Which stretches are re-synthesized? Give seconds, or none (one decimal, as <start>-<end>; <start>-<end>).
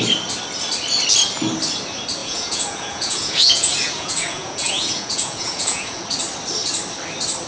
2.2-6.0